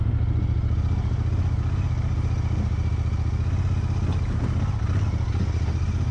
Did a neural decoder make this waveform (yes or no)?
no